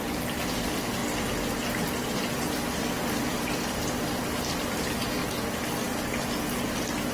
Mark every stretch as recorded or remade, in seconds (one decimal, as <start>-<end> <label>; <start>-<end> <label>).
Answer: 0.0-1.0 remade; 1.0-2.3 recorded; 2.3-5.2 remade; 5.2-6.6 recorded; 6.6-7.1 remade